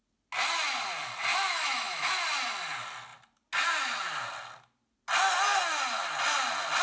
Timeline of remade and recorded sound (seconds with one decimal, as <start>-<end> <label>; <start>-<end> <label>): 0.0-1.3 recorded; 1.3-2.1 remade; 2.1-6.8 recorded